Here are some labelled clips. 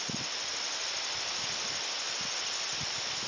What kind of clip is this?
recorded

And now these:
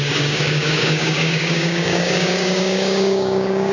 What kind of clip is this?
remade